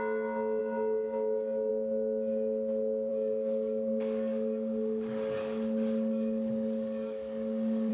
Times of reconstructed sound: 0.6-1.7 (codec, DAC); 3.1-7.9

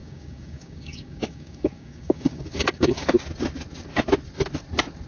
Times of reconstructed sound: 0.0-3.1 (codec, DAC)

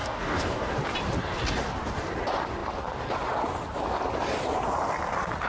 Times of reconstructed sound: 0.0-0.7 (codec, DAC)

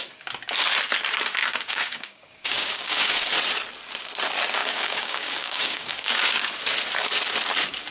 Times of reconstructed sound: 1.4-3.1 (codec, DAC); 4.6-6.5

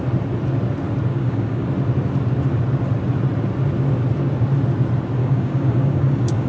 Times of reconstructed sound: 1.1-1.7 (codec, DAC); 5.2-6.5

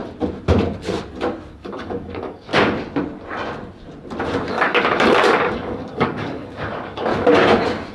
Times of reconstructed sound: 1.5-2.5 (codec, DAC); 4.5-7.1

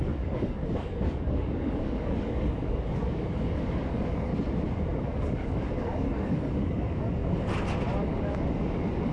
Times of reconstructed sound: 0.0-4.3 (codec, DAC); 5.0-7.2; 8.0-9.1

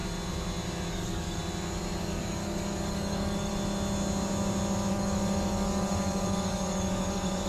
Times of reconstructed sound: 0.9-1.4 (codec, DAC); 2.0-3.5; 4.9-7.5